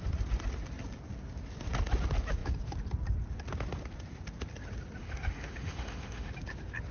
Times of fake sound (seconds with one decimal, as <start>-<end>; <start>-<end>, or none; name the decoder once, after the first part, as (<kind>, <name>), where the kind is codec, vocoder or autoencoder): 5.0-6.3 (autoencoder, DAC-VAE)